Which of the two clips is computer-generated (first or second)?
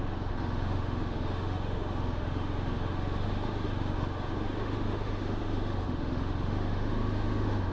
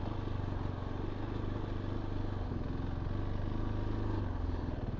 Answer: first